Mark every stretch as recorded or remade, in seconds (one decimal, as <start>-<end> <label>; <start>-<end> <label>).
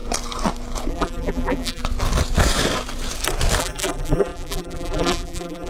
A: 0.0-0.9 recorded; 0.9-1.8 remade; 1.8-3.6 recorded; 3.6-5.7 remade